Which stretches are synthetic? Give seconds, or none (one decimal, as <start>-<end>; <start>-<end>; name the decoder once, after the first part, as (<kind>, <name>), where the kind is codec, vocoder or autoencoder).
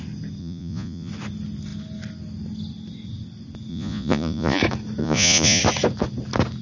0.4-1.1 (vocoder, Vocos); 3.7-4.6; 5.0-5.6